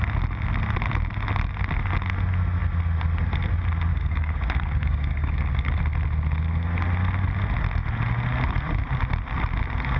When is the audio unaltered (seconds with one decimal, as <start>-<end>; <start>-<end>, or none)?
0.0-3.9; 5.8-10.0